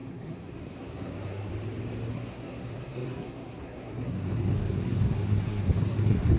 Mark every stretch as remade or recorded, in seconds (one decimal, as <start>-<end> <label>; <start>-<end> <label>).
0.0-1.5 remade; 1.5-2.1 recorded; 2.1-6.4 remade